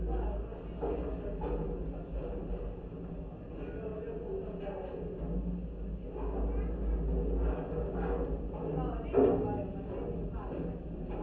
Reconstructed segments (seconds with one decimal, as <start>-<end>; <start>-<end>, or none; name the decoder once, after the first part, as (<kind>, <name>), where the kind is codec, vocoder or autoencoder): none